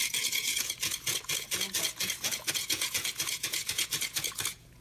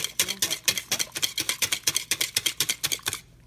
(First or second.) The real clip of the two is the second